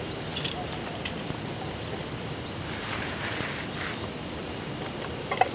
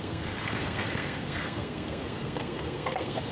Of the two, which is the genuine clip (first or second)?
first